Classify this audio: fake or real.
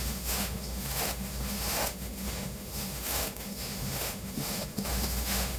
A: fake